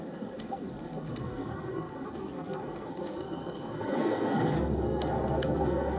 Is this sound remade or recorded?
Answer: remade